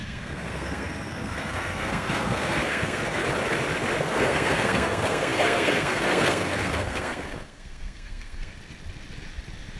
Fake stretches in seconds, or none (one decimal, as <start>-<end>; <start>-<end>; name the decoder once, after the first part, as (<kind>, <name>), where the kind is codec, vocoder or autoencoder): 0.0-3.2 (codec, SNAC); 4.0-8.5